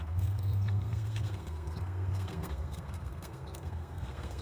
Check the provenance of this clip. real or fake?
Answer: fake